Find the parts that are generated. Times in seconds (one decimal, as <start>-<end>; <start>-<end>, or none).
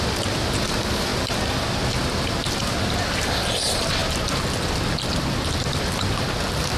0.0-1.1; 2.7-4.0; 5.6-6.8